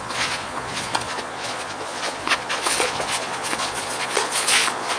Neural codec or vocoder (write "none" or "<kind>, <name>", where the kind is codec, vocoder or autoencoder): vocoder, Vocos